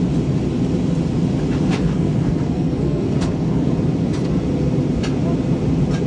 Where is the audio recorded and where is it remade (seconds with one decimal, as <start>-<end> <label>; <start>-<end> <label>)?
0.0-1.7 recorded; 1.7-3.7 remade; 3.7-6.1 recorded